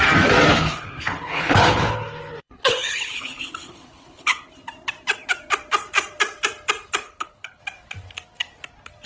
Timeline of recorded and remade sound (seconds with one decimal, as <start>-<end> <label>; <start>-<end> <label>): 0.0-0.5 recorded; 0.5-4.5 remade; 4.5-7.0 recorded; 7.0-7.6 remade; 7.6-9.1 recorded